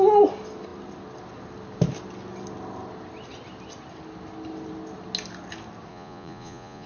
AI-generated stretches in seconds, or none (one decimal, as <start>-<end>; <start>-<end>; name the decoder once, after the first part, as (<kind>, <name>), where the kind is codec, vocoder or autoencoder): 5.9-6.9 (vocoder, Vocos)